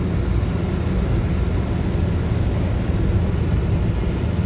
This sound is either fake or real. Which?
real